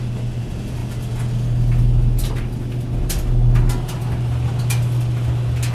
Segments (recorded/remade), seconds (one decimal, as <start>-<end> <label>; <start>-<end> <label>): 0.0-5.7 recorded

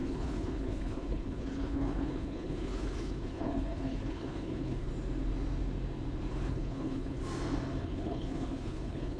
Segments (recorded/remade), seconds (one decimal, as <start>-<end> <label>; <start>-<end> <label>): 0.0-4.9 remade; 4.9-6.3 recorded; 6.3-7.2 remade; 7.2-7.8 recorded; 7.8-9.2 remade

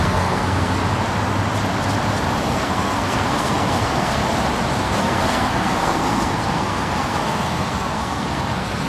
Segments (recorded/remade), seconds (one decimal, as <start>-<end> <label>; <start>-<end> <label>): 0.0-0.8 remade; 0.8-2.4 recorded; 2.4-4.2 remade; 4.2-4.8 recorded; 4.8-8.9 remade

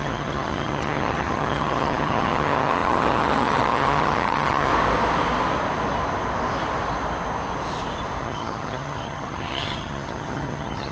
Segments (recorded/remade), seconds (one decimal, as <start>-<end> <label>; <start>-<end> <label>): 0.0-4.7 remade; 4.7-8.2 recorded; 8.2-10.9 remade

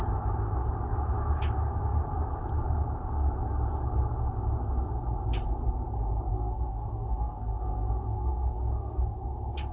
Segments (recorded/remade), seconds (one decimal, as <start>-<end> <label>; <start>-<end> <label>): 0.0-6.3 recorded; 6.3-9.2 remade; 9.2-9.7 recorded

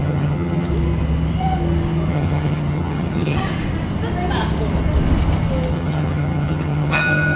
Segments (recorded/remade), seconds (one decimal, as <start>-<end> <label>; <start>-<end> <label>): 0.0-0.7 remade; 0.7-2.1 recorded; 2.1-3.4 remade; 3.4-5.7 recorded; 5.7-7.4 remade

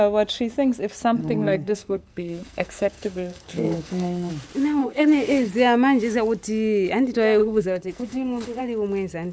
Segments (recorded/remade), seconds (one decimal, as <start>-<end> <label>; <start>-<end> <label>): 0.0-1.2 recorded; 1.2-4.3 remade; 4.3-4.8 recorded; 4.8-5.5 remade; 5.5-7.4 recorded; 7.4-8.6 remade; 8.6-9.3 recorded

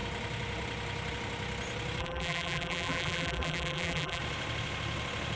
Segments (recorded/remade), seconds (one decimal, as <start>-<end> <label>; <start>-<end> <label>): 0.0-2.0 recorded; 2.0-4.2 remade; 4.2-5.4 recorded